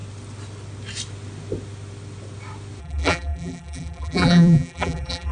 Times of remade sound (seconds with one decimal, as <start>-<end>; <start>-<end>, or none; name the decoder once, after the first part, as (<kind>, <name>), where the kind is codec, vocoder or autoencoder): 2.8-5.3 (vocoder, BigVGAN v2)